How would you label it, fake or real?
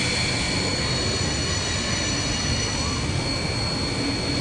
real